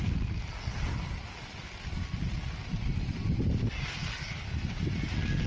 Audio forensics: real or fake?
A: real